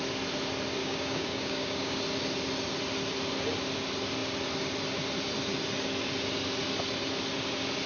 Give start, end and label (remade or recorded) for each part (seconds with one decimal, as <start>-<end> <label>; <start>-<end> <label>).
0.0-0.8 recorded; 0.8-2.0 remade; 2.0-7.9 recorded